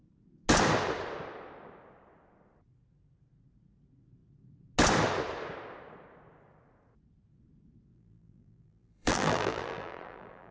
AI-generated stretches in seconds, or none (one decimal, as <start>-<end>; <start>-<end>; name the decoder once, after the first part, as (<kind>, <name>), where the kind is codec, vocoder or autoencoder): 7.9-10.5 (vocoder, BigVGAN v2)